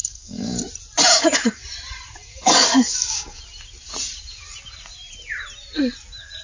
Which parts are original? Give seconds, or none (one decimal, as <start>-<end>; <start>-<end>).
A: 0.6-1.1; 1.6-2.3; 3.4-6.4